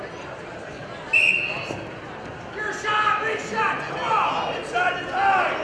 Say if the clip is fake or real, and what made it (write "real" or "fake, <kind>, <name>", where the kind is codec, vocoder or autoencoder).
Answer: real